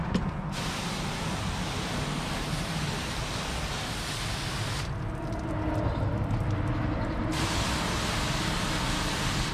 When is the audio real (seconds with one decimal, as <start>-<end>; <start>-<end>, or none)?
0.0-9.5